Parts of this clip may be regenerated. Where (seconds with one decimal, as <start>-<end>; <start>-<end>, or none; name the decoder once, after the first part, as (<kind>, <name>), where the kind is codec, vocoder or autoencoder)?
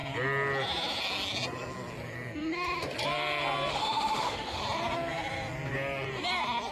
3.7-4.6 (autoencoder, DAC-VAE)